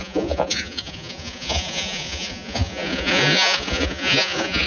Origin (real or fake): fake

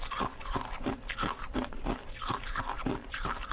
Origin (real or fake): real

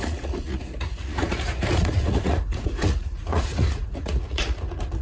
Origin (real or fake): fake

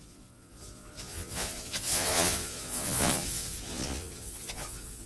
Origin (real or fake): fake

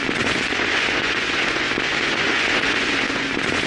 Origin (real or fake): fake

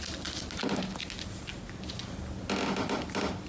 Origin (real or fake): real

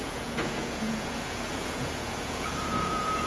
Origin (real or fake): fake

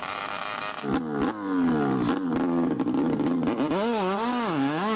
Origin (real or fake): real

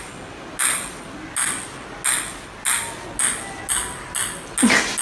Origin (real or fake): real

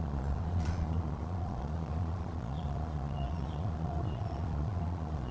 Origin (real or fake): fake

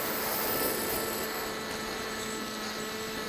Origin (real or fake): real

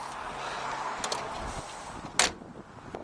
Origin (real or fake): real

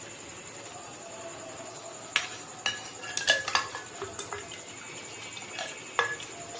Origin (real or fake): real